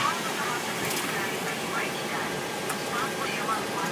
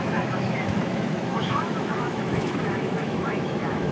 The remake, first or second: second